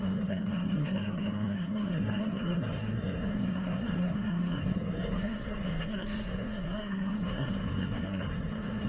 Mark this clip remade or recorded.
remade